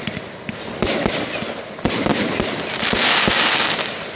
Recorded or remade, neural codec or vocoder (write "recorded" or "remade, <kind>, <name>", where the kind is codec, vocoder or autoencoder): recorded